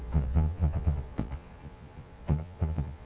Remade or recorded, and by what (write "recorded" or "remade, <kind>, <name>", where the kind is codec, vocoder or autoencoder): remade, vocoder, Vocos